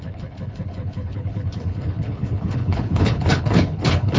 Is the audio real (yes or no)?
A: no